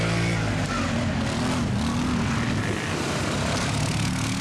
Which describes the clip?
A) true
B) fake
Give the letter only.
A